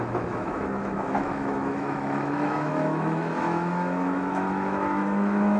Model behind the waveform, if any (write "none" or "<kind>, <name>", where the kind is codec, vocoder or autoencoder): autoencoder, DAC-VAE